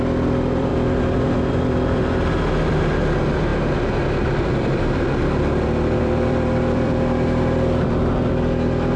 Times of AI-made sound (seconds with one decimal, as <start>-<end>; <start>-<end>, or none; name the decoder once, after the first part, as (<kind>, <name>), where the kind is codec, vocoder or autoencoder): 0.0-0.7 (vocoder, BigVGAN v2); 2.8-9.0